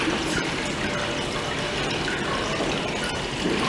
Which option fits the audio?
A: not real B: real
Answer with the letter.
B